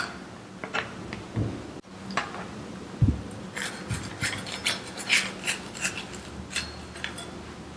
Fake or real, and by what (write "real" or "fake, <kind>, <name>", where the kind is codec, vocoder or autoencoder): real